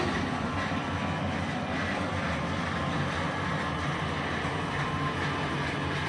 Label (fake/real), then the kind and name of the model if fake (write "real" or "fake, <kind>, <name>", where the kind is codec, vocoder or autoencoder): real